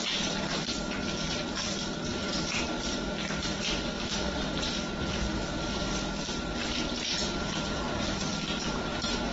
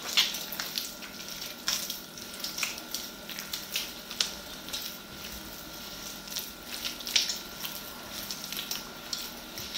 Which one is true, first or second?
second